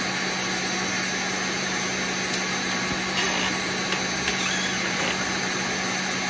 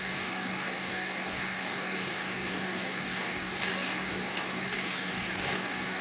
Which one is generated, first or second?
second